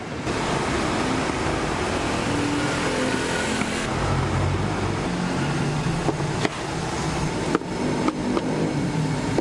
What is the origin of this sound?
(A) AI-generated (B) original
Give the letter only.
B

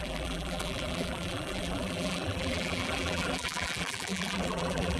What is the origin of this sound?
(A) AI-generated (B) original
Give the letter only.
A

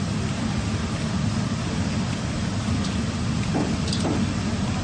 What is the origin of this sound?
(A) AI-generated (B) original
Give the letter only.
A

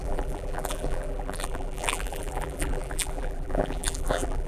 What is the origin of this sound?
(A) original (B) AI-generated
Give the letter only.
B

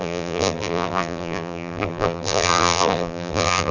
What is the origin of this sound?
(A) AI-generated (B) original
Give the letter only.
A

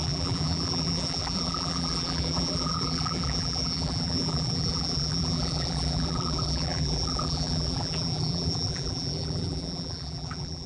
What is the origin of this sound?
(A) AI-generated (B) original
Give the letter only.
A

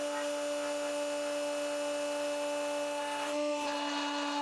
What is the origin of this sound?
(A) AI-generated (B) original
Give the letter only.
B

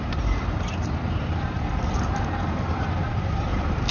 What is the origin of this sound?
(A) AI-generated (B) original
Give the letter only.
A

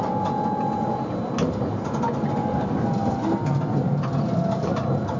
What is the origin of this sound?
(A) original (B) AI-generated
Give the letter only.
A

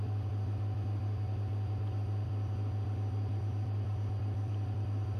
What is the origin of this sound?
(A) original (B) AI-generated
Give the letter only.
B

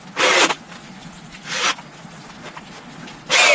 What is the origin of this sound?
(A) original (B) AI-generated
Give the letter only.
A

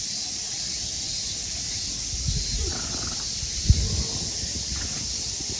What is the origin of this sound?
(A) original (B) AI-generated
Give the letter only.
A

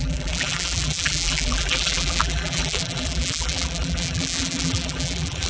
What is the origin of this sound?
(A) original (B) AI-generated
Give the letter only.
B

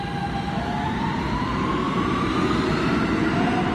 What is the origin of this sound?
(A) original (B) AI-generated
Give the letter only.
A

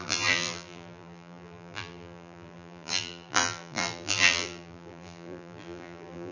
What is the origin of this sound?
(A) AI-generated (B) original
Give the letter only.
A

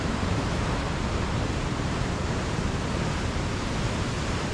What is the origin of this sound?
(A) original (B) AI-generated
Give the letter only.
A